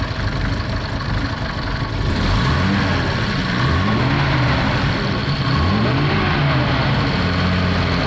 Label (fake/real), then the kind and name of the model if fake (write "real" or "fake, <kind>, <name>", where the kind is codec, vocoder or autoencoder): real